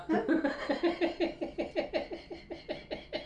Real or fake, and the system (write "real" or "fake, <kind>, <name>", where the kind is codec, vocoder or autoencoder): real